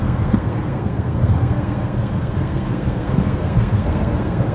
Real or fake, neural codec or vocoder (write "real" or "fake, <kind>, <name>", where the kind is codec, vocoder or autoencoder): fake, codec, SNAC